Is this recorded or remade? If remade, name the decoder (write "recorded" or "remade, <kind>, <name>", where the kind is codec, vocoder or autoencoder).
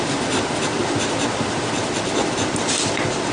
remade, vocoder, BigVGAN v2